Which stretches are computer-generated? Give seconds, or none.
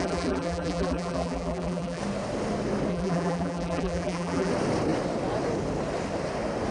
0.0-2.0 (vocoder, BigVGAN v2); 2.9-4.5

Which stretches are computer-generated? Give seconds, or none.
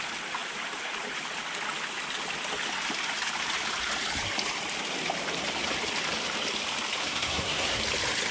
7.0-7.8 (codec, SNAC)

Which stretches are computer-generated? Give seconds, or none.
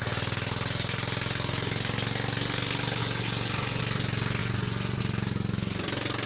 3.0-3.8 (vocoder, Vocos); 4.4-5.0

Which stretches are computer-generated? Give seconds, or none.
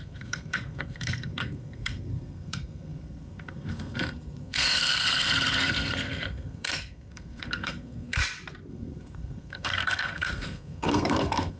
0.0-8.2 (codec, SNAC); 8.7-11.6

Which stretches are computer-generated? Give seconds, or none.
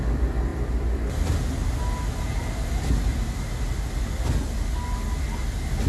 none